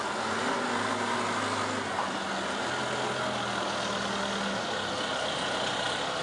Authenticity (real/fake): real